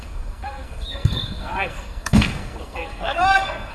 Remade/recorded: remade